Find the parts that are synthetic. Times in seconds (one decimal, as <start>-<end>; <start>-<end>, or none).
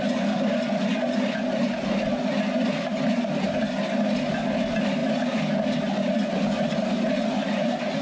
none